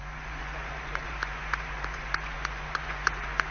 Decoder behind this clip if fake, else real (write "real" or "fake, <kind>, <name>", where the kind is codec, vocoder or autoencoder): fake, vocoder, Vocos